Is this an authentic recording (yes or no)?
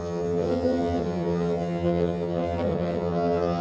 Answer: no